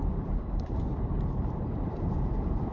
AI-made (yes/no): no